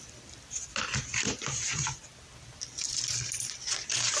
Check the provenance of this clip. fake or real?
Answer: real